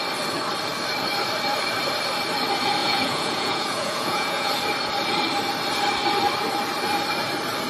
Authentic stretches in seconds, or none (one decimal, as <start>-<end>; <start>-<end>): 0.0-2.8; 4.5-7.7